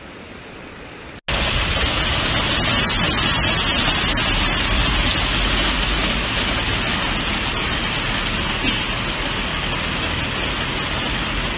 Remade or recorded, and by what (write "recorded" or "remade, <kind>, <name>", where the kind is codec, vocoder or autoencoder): recorded